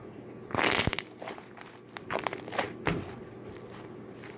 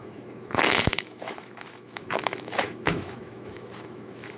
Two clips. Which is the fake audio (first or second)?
second